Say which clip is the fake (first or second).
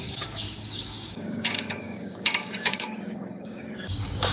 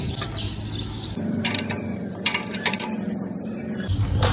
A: first